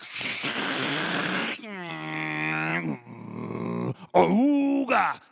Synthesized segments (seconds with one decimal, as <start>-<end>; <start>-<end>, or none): 0.0-0.5; 1.4-1.9